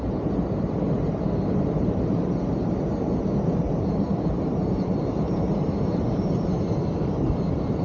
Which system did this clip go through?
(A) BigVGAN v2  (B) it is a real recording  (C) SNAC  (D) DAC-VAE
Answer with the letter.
A